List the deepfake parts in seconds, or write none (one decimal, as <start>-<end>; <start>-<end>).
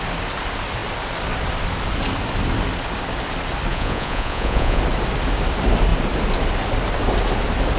3.7-4.8